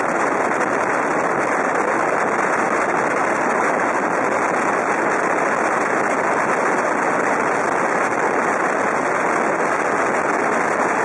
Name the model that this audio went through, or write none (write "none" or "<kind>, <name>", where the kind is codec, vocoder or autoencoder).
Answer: none